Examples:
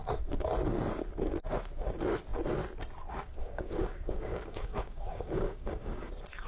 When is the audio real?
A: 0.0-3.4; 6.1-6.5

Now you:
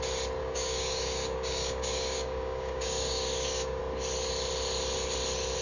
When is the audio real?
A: 0.0-0.4; 3.8-5.6